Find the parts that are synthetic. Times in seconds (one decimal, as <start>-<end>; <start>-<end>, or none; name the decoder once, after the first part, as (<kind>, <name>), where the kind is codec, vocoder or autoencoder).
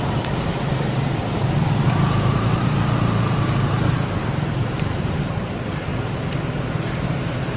0.0-5.9 (vocoder, BigVGAN v2); 6.9-7.6